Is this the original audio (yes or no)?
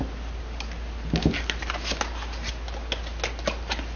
yes